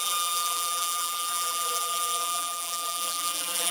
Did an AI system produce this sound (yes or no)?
yes